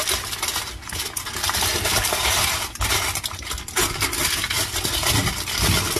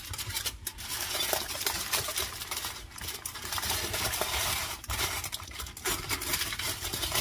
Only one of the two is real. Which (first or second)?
first